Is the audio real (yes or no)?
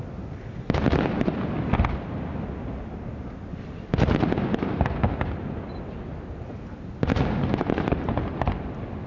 yes